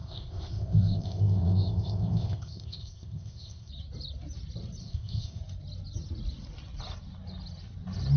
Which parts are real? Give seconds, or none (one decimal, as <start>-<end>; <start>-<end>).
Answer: 3.7-4.8; 5.4-8.2